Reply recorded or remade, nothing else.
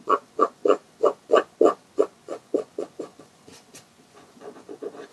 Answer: remade